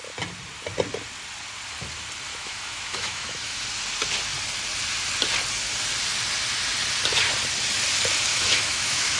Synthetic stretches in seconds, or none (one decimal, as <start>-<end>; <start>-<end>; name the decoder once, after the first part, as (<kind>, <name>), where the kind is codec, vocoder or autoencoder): 2.3-3.6 (autoencoder, DAC-VAE); 8.3-9.2